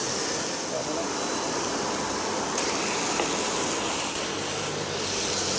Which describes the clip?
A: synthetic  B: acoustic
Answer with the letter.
B